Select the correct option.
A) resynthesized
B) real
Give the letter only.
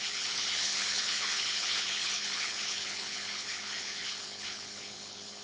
A